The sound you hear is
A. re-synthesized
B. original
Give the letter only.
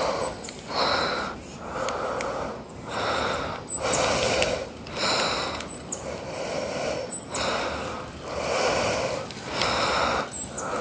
B